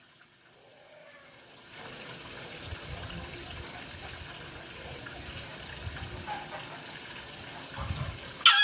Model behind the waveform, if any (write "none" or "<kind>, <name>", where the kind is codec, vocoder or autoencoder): none